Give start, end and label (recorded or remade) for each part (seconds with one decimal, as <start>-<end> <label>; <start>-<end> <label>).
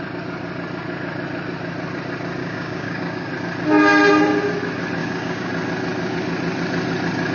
0.0-2.4 recorded; 2.4-3.3 remade; 3.3-5.0 recorded; 5.0-5.5 remade; 5.5-7.3 recorded